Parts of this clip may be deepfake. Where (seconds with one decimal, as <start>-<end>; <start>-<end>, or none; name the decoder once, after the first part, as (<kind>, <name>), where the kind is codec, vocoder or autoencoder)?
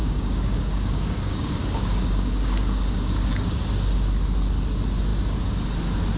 0.0-3.7 (codec, DAC)